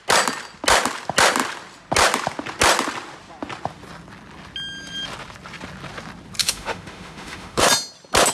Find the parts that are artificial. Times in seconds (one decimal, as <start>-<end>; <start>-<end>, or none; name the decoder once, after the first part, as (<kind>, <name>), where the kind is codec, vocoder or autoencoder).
6.4-7.6 (autoencoder, DAC-VAE)